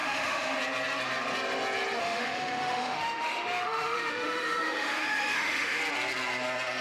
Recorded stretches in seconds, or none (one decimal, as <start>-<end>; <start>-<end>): 0.6-2.0; 5.8-6.8